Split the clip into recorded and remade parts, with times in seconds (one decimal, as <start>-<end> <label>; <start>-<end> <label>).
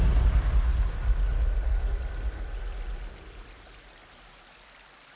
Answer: 0.0-5.2 recorded